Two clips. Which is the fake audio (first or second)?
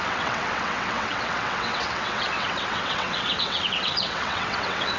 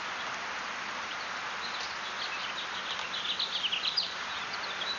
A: first